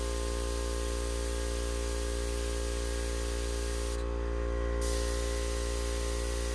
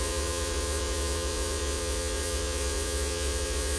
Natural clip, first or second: first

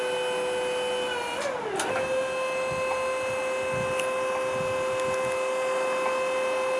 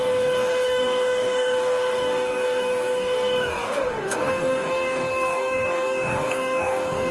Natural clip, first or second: first